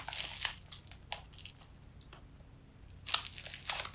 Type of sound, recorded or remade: recorded